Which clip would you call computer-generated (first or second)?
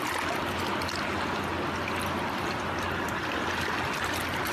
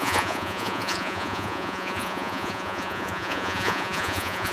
second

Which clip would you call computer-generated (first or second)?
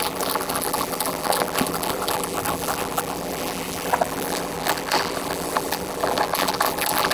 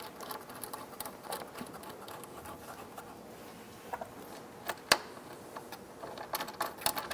first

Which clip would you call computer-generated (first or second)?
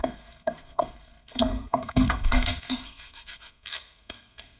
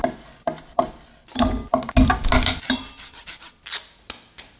first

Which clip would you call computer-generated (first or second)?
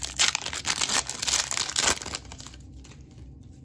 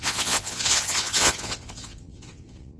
second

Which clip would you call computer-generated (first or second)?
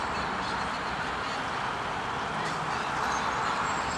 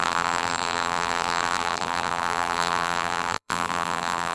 second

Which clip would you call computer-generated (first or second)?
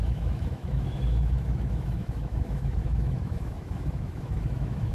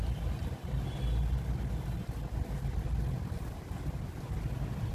first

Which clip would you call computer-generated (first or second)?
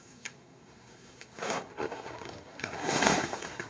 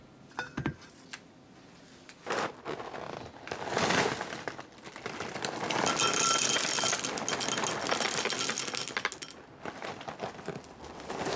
first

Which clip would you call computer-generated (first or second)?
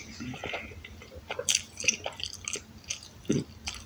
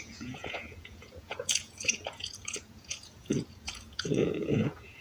second